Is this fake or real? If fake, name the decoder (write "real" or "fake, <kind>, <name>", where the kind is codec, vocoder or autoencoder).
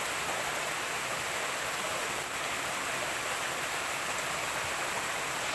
real